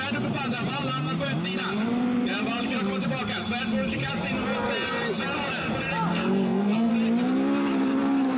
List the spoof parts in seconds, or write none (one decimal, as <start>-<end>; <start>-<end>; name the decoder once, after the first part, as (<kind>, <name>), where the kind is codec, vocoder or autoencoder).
6.1-6.9 (codec, SNAC)